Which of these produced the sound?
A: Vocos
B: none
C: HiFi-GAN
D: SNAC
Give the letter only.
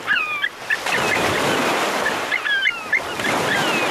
B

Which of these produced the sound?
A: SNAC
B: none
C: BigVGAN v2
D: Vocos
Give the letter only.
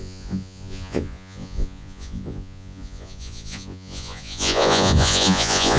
D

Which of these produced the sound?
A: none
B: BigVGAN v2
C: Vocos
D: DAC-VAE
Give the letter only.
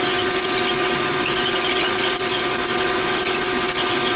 A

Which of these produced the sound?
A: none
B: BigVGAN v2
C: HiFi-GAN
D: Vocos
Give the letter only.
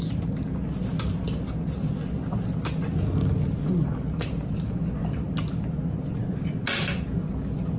A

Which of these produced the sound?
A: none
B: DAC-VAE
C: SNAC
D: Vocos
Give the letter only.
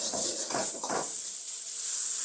D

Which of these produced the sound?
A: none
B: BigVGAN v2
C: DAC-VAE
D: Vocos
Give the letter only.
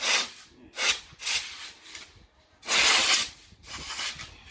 A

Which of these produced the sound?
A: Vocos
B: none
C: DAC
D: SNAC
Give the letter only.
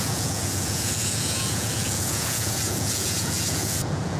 A